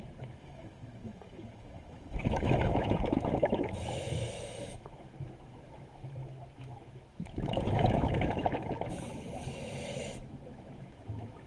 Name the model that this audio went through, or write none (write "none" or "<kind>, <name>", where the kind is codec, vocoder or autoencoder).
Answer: autoencoder, DAC-VAE